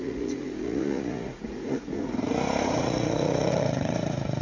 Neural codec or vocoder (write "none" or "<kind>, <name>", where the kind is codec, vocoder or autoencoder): vocoder, Vocos